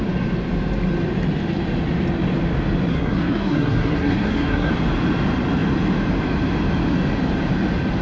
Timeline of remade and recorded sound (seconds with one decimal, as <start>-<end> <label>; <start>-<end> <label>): 0.0-2.9 recorded; 2.9-4.7 remade; 4.7-8.0 recorded